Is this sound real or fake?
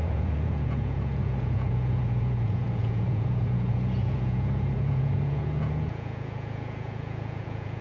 fake